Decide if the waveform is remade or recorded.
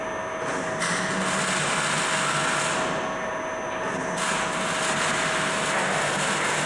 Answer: recorded